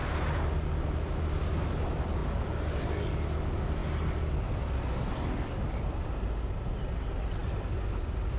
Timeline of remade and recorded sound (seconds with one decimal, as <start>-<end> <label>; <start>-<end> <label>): 0.0-8.4 recorded